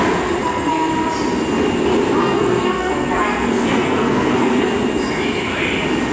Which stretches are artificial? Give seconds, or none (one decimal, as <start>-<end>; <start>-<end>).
0.4-0.9; 2.2-4.7